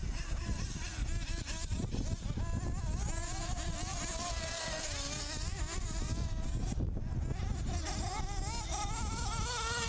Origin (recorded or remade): recorded